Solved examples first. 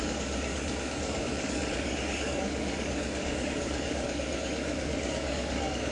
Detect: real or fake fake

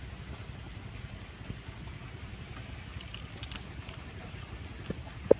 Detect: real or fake real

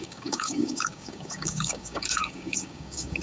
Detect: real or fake fake